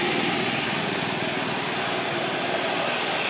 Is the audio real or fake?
real